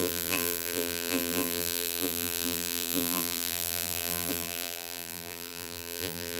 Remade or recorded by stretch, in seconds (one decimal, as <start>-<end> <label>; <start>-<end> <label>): 0.0-6.4 remade